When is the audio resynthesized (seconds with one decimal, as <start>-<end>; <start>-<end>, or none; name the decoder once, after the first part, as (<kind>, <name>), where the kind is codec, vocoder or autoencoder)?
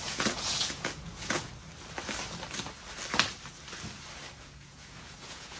0.0-1.5 (vocoder, Vocos); 4.4-5.6